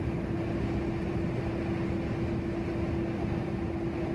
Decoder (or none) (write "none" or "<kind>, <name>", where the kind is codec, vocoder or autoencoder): none